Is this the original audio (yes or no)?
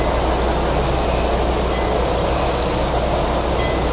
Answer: yes